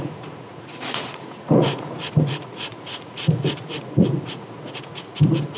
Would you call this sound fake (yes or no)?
yes